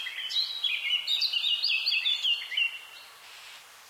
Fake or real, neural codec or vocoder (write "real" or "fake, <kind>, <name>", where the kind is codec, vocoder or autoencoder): real